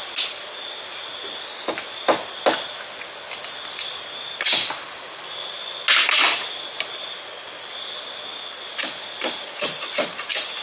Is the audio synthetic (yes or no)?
no